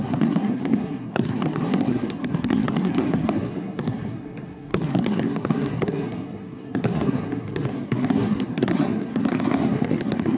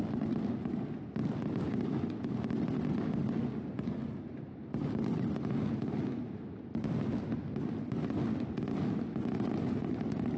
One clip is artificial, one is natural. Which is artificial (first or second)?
first